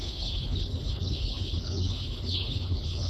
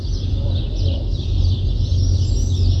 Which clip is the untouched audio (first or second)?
second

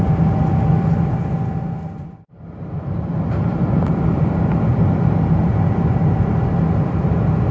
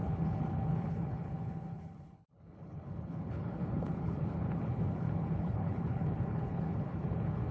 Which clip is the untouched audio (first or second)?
first